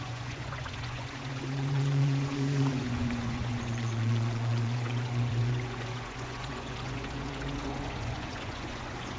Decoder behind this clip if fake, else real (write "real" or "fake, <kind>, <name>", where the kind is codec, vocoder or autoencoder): fake, vocoder, Vocos